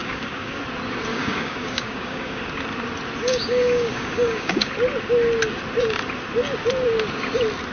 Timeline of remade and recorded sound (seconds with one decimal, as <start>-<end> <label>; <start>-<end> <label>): 0.0-0.6 remade; 0.6-1.1 recorded; 1.1-2.4 remade; 2.4-3.3 recorded; 3.3-4.7 remade; 4.7-7.7 recorded